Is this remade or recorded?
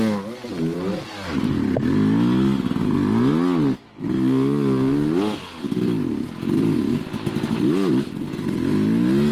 recorded